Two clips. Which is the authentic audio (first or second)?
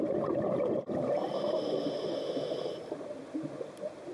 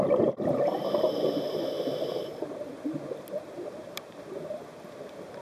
first